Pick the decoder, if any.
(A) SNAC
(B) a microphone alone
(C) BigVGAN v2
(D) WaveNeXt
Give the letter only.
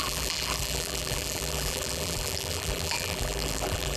C